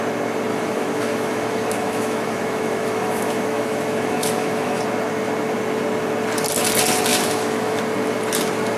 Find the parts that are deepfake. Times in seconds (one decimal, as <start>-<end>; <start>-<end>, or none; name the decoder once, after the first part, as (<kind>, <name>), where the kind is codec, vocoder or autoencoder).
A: 0.5-4.8 (autoencoder, DAC-VAE); 7.1-7.8